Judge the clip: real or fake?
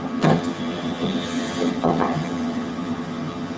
fake